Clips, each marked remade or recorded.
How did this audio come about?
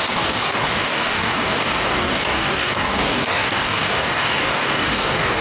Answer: remade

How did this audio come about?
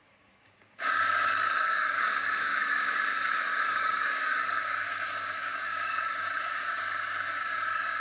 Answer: remade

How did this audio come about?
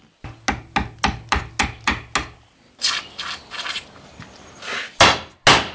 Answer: recorded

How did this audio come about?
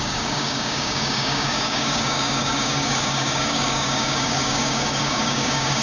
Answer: remade